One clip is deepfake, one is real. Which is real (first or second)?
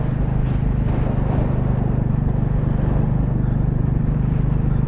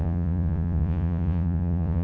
first